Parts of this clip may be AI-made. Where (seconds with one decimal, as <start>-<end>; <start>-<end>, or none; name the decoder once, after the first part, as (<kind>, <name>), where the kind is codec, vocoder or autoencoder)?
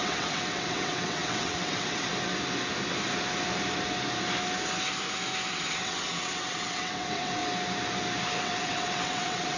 0.0-2.1 (vocoder, WaveNeXt); 5.5-7.4; 8.4-9.6